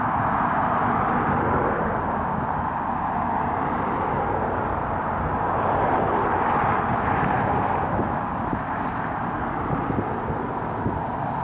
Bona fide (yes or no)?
yes